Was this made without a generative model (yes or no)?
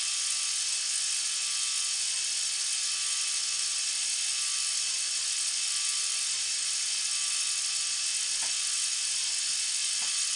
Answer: yes